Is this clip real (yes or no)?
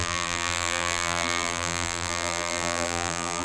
no